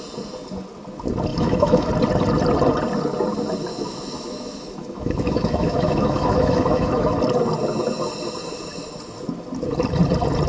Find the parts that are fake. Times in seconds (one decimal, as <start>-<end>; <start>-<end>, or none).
1.3-1.9; 3.7-7.2